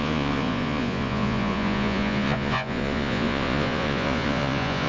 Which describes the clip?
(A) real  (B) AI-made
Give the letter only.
B